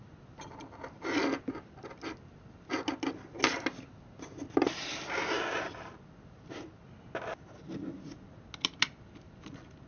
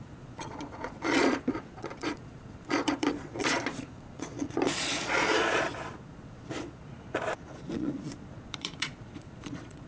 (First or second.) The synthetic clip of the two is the second